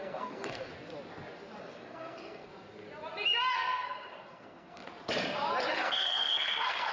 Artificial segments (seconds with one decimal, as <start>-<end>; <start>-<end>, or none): 0.0-0.7; 1.6-2.5; 3.5-4.8; 5.7-6.9